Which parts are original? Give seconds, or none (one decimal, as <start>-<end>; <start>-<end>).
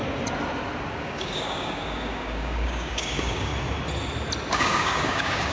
0.0-1.0; 3.5-4.5